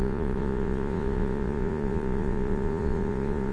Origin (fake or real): fake